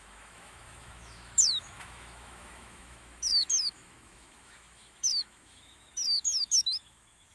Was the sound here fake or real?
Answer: fake